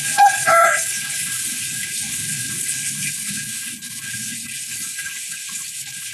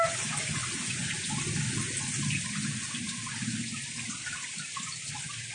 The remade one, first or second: first